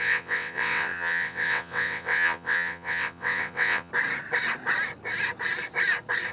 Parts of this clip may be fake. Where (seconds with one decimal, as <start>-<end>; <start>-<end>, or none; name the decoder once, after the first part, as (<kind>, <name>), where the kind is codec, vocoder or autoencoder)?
0.0-3.9 (vocoder, WaveNeXt)